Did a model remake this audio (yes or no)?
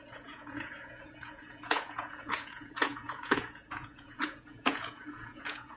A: yes